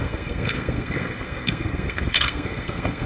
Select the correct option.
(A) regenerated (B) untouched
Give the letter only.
A